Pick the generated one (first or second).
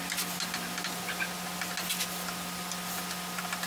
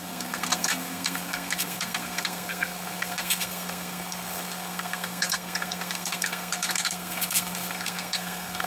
second